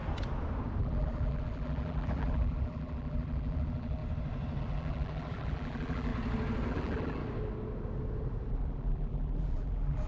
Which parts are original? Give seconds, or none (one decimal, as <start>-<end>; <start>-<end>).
0.0-0.8; 4.0-4.6; 6.1-6.7; 7.2-8.5